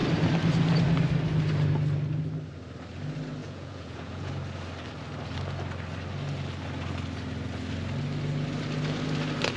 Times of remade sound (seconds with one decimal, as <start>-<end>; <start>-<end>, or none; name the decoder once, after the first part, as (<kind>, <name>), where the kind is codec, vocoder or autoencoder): 3.4-4.3 (vocoder, Vocos)